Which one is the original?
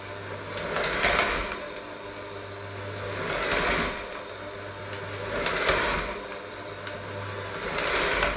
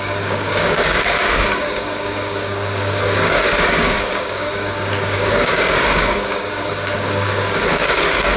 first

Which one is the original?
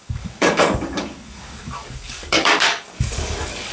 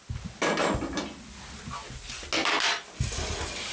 second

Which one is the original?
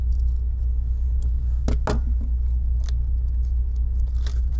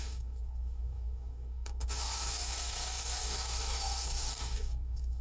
first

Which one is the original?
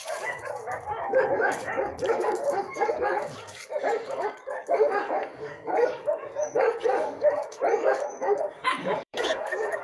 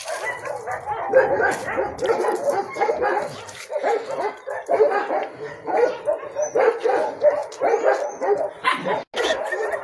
second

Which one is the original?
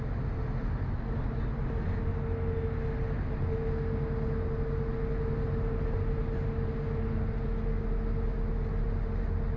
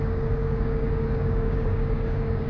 first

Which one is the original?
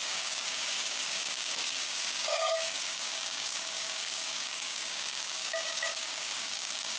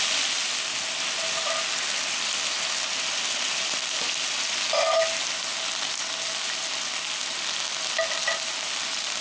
second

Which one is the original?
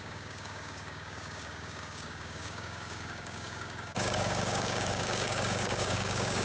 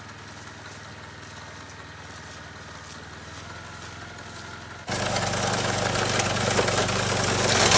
second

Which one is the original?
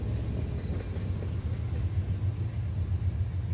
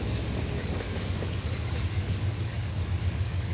first